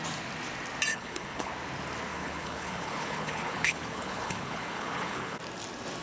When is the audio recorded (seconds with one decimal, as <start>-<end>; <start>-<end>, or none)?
0.0-0.9; 1.5-2.1; 5.4-6.0